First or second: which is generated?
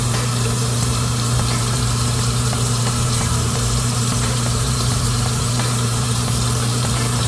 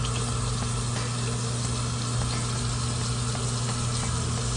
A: first